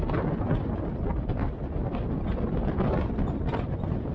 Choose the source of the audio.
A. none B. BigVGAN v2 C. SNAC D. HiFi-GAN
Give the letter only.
A